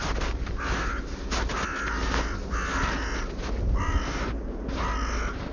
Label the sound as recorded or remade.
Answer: recorded